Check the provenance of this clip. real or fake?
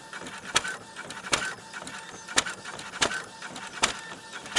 real